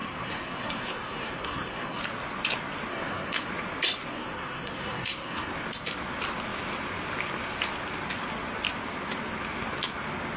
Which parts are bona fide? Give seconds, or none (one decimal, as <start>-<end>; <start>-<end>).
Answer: 2.0-2.9; 3.5-4.1; 5.5-10.4